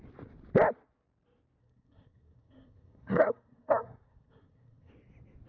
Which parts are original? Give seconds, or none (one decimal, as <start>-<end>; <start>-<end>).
0.0-1.6; 4.9-5.5